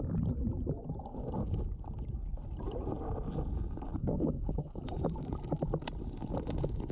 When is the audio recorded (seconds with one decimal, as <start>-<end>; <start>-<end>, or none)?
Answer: 0.0-4.0; 4.8-6.9